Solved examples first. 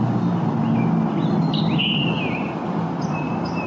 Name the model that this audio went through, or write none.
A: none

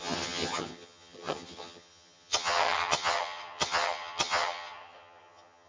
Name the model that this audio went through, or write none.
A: vocoder, HiFi-GAN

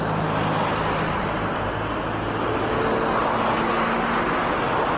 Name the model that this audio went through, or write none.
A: none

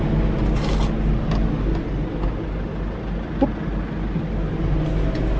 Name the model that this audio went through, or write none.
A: none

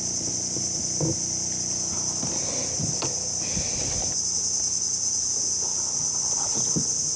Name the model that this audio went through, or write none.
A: none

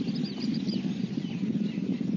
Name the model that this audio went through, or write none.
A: none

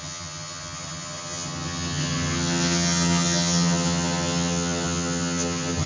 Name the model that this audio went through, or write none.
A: vocoder, HiFi-GAN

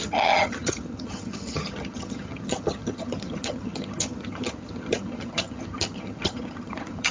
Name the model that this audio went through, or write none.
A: vocoder, HiFi-GAN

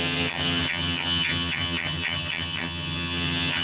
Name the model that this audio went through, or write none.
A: vocoder, HiFi-GAN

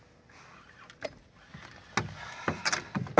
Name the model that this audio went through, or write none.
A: none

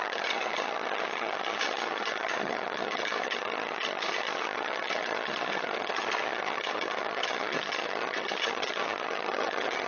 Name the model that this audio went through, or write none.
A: vocoder, HiFi-GAN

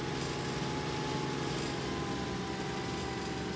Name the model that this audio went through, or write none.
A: none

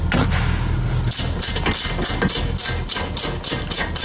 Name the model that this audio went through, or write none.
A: none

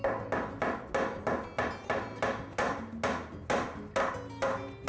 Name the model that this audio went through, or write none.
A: none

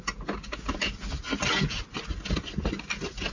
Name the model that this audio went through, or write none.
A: none